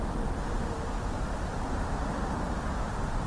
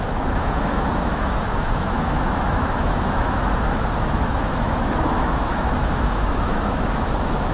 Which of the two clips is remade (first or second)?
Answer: second